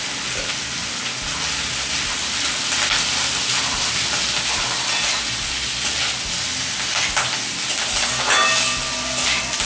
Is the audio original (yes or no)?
yes